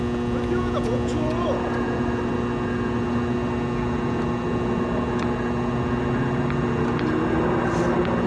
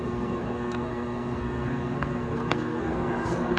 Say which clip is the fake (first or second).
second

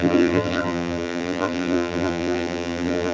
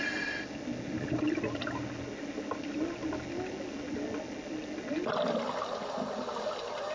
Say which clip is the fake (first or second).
first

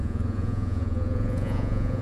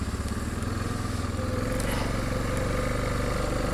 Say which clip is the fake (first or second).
first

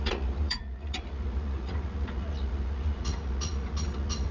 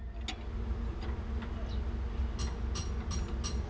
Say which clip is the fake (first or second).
first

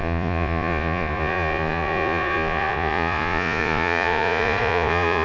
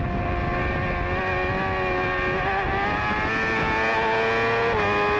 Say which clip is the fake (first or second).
first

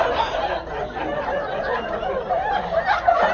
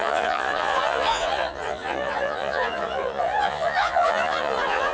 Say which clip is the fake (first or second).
second